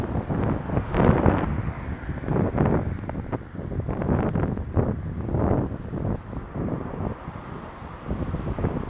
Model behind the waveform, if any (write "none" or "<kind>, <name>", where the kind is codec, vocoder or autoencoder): none